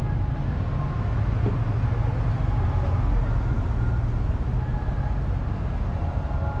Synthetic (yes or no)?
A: no